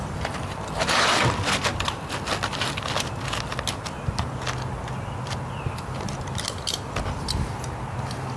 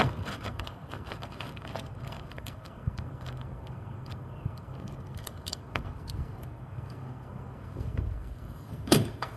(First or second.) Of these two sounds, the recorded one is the first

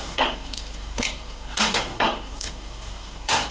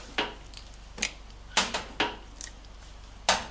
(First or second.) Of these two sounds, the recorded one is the second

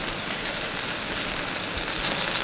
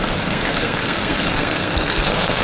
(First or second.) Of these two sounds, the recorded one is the first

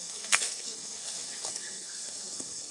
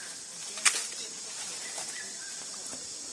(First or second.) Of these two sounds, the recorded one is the second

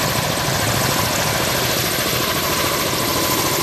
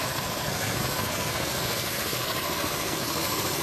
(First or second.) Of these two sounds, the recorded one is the first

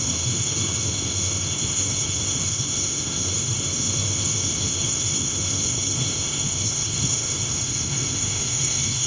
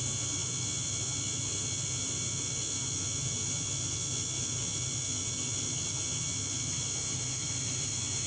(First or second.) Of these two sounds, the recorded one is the second